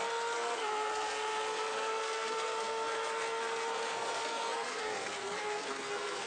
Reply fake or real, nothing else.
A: fake